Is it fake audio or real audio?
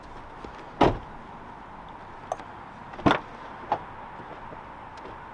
real